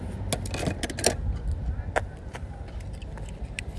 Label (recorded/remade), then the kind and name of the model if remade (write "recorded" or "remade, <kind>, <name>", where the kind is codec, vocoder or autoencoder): recorded